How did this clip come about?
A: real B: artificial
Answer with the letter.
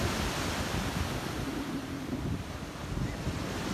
A